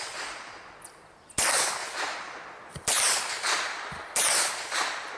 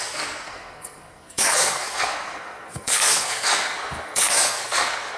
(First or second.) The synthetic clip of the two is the second